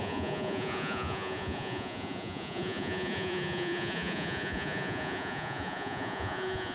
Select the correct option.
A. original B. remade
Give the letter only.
B